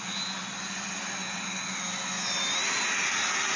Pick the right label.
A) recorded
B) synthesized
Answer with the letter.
A